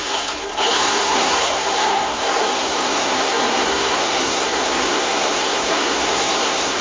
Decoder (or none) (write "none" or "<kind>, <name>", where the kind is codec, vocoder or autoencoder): codec, SNAC